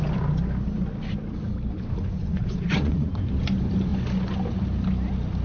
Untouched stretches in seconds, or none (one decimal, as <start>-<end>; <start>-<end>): 0.0-2.2; 3.1-5.4